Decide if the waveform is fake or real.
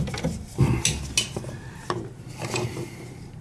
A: real